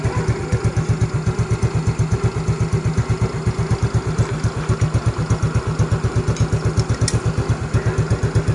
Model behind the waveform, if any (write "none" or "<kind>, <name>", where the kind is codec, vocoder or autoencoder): none